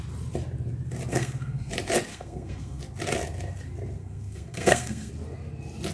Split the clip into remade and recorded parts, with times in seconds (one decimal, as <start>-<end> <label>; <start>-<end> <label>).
0.0-1.1 recorded; 1.1-1.7 remade; 1.7-2.1 recorded; 2.1-2.8 remade; 2.8-4.0 recorded; 4.0-5.1 remade; 5.1-5.9 recorded